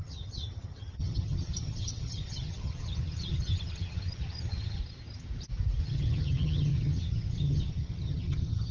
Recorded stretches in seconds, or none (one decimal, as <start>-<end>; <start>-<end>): 4.8-5.8